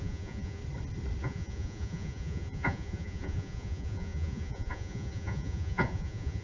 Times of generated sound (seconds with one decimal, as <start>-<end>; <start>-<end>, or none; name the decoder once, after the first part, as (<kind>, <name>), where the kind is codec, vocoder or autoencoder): 0.0-0.6 (vocoder, Vocos); 1.2-6.4